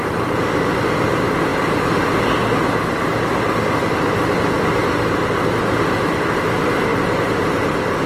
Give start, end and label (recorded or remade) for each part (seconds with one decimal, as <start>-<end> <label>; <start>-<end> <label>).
0.0-8.1 recorded